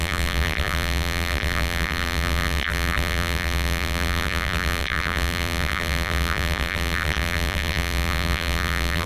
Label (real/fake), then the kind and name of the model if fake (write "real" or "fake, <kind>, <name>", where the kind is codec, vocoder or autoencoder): fake, vocoder, BigVGAN v2